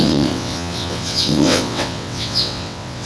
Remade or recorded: remade